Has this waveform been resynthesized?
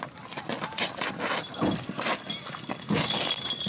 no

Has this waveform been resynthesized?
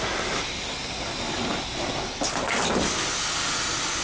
no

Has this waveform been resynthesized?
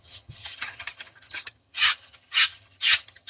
yes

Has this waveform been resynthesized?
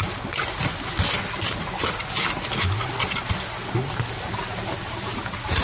no